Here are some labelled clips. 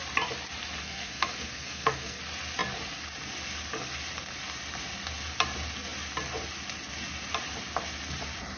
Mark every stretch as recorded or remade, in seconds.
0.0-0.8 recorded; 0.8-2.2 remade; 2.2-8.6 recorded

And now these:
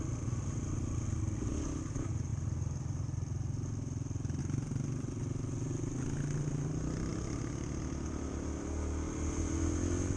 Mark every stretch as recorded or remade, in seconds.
0.0-10.2 recorded

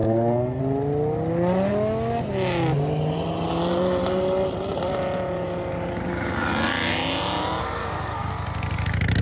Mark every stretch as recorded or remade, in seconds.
0.0-0.6 remade; 0.6-7.6 recorded; 7.6-8.3 remade; 8.3-9.2 recorded

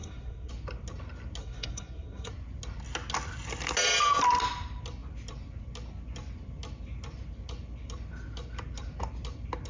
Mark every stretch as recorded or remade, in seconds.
0.0-0.5 remade; 0.5-1.4 recorded; 1.4-2.3 remade; 2.3-9.7 recorded

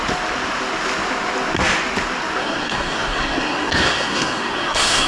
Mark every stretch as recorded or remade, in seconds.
0.0-2.4 recorded; 2.4-5.1 remade

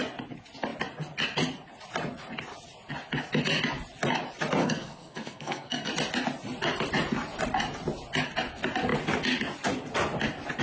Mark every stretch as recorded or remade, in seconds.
0.0-4.6 recorded; 4.6-5.9 remade; 5.9-10.6 recorded

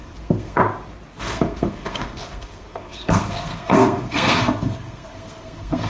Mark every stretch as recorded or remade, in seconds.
0.0-0.6 remade; 0.6-1.2 recorded; 1.2-5.9 remade